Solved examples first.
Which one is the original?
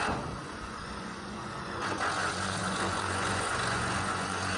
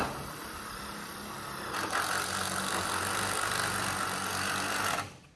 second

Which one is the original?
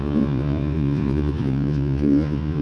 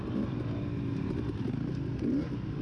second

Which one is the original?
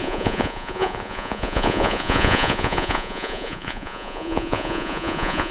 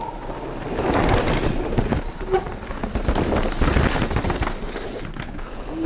second